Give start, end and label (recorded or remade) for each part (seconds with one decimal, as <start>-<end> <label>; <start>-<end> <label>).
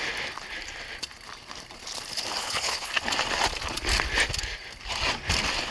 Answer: 0.0-2.4 recorded; 2.4-2.9 remade; 2.9-5.7 recorded